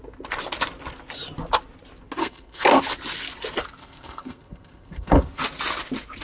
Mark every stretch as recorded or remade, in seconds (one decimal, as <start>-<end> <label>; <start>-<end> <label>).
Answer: 0.0-2.2 recorded; 2.2-2.8 remade; 2.8-3.8 recorded; 3.8-5.4 remade; 5.4-6.2 recorded